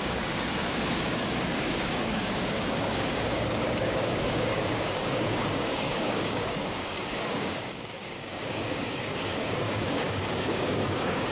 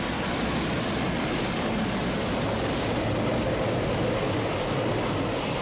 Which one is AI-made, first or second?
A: first